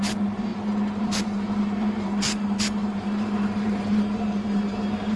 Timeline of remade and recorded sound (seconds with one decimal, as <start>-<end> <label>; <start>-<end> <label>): 0.0-0.5 remade; 0.5-1.0 recorded; 1.0-5.2 remade